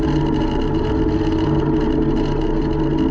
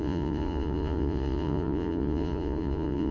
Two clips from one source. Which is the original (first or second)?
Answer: first